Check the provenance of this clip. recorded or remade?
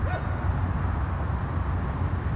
recorded